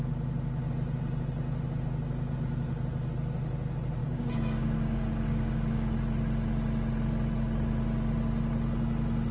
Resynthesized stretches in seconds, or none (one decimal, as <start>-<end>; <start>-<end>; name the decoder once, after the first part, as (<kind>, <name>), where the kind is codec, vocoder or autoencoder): 4.0-5.9 (codec, DAC)